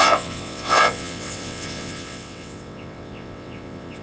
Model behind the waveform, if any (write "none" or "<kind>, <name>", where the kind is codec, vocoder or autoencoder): vocoder, WaveNeXt